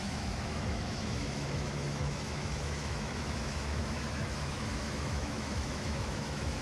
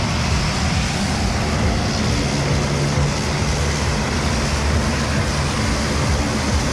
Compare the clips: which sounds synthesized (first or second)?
first